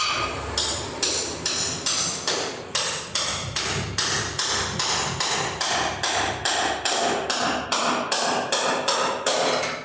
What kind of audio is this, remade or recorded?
remade